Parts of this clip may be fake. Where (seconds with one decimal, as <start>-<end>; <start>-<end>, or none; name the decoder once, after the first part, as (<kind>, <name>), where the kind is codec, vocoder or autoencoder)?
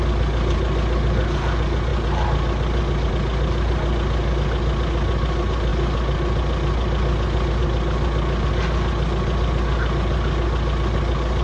none